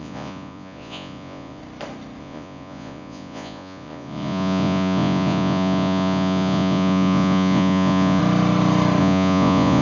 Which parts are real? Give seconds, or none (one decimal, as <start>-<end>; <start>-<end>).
1.6-2.2; 8.2-9.0